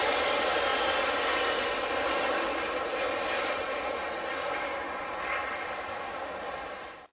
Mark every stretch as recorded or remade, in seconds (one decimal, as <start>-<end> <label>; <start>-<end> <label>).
0.0-7.1 recorded